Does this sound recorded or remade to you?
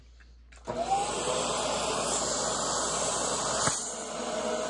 recorded